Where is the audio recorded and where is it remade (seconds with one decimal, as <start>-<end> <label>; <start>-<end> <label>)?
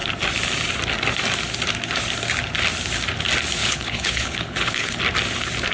0.0-3.6 recorded; 3.6-5.0 remade; 5.0-5.7 recorded